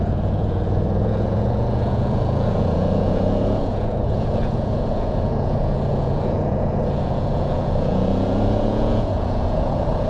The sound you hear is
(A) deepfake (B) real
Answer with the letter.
A